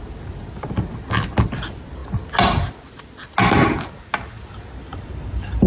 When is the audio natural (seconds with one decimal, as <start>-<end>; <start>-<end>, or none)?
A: 0.0-4.9